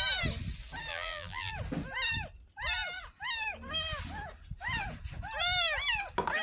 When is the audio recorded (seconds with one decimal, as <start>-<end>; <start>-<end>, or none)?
0.0-0.9; 1.5-6.4